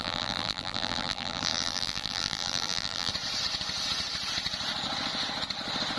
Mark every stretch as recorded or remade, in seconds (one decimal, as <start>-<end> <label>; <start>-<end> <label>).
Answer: 0.0-3.1 remade; 3.1-6.0 recorded